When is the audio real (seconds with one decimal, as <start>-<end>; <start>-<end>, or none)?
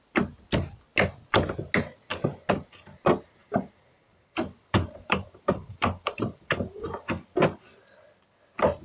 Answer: 0.0-3.4; 7.6-8.8